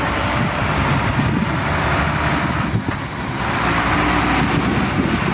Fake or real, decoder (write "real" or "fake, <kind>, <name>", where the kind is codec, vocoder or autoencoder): real